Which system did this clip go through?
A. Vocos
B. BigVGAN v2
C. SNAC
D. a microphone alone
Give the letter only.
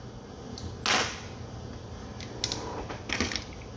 D